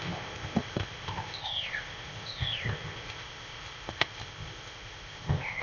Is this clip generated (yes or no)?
yes